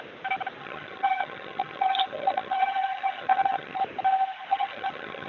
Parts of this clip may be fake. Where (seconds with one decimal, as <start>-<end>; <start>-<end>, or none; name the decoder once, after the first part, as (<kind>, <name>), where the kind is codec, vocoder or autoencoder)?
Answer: 0.6-3.8 (vocoder, HiFi-GAN); 4.5-5.3